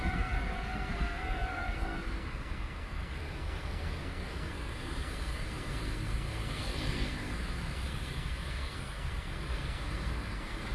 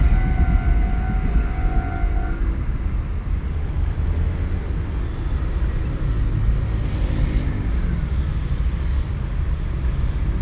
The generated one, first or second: first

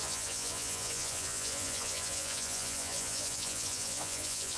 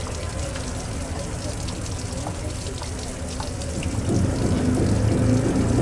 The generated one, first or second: first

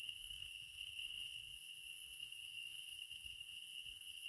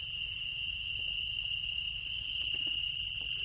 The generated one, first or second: first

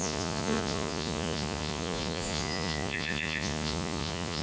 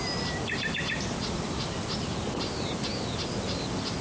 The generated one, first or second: first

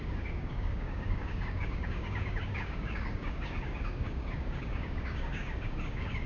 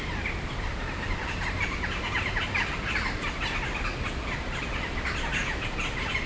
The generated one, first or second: first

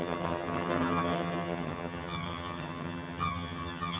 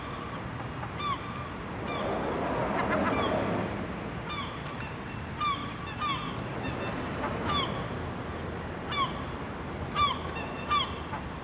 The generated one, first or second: first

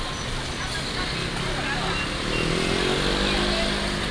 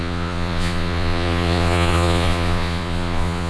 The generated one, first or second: second